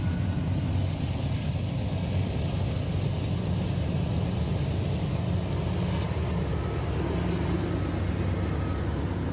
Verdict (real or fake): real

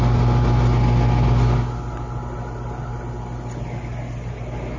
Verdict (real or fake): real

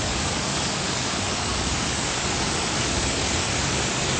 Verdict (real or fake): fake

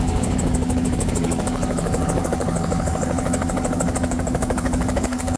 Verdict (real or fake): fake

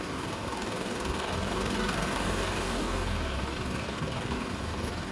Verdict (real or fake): fake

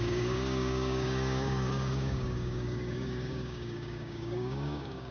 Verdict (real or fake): fake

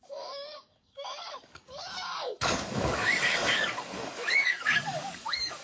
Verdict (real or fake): fake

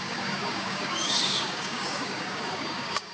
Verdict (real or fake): fake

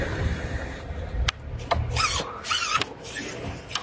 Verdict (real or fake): real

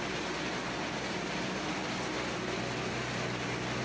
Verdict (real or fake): real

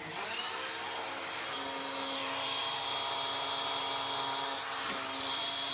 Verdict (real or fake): real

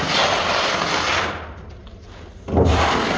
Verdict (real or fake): real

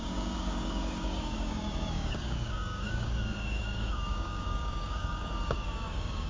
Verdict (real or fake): fake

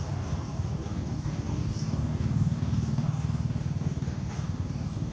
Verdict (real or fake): fake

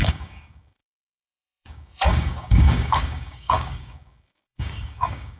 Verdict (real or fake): fake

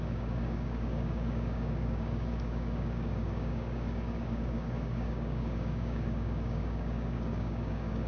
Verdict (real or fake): fake